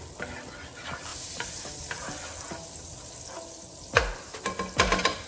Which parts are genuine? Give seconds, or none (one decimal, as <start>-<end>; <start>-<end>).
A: 0.0-5.3